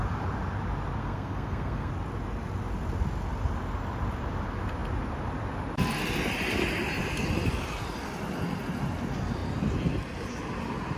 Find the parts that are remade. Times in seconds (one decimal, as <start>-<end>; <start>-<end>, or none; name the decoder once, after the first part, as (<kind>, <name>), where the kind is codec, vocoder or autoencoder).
1.0-1.9 (codec, SNAC)